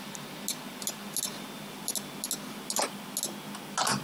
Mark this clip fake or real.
real